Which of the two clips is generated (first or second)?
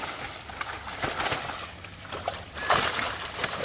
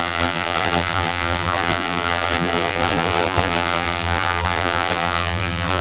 second